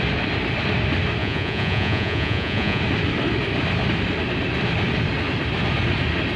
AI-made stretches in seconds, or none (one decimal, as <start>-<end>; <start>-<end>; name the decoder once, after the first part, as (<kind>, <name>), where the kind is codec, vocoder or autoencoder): 1.2-2.8 (vocoder, Vocos)